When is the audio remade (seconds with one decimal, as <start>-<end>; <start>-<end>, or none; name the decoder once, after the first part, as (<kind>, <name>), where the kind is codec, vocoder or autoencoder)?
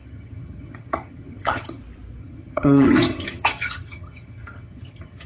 0.0-1.8 (vocoder, HiFi-GAN); 2.2-5.3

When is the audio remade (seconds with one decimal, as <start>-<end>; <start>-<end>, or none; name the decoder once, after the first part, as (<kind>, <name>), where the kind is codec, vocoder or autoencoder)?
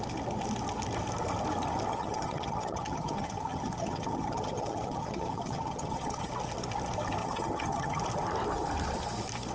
1.9-6.3 (vocoder, HiFi-GAN); 7.2-8.0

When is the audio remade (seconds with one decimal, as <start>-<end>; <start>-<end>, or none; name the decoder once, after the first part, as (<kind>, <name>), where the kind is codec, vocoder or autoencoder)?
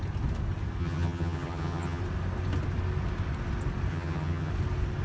0.8-2.0 (vocoder, HiFi-GAN); 3.9-4.5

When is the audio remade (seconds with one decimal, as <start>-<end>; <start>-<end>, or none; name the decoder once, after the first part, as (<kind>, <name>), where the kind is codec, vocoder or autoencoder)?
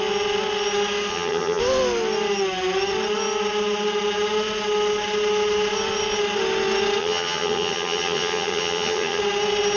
1.1-1.6 (vocoder, HiFi-GAN); 7.0-9.2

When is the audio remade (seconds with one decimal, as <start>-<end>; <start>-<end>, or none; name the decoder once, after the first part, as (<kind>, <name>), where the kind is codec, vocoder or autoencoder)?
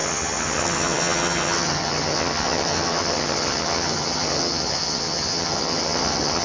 0.0-6.4 (vocoder, HiFi-GAN)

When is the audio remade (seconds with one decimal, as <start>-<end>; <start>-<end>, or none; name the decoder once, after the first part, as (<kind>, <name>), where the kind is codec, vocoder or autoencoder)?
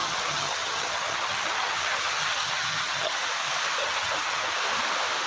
0.0-3.2 (vocoder, HiFi-GAN); 3.8-4.5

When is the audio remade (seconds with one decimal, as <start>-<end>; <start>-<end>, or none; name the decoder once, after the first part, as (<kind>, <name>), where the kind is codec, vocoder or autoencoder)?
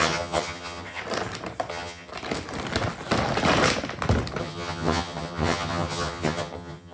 0.0-1.0 (vocoder, HiFi-GAN); 1.7-2.1; 4.4-6.9